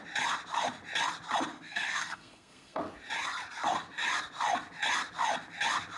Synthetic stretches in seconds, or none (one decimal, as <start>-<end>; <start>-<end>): 1.5-2.8